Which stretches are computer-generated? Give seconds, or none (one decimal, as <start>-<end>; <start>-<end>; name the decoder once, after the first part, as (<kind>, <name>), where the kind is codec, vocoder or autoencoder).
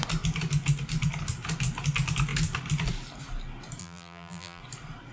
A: 3.8-4.6 (vocoder, BigVGAN v2)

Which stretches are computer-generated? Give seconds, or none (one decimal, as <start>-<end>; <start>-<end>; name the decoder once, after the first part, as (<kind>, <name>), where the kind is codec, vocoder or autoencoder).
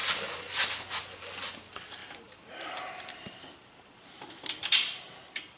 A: 2.0-5.6 (vocoder, BigVGAN v2)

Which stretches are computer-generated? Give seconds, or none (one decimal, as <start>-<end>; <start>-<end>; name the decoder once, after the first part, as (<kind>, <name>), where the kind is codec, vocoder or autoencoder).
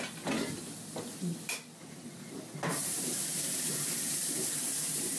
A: 2.8-4.6 (vocoder, BigVGAN v2)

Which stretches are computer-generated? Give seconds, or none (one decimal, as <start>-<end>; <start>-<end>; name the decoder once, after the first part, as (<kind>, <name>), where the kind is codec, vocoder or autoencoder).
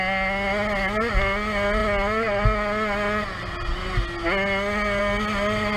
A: none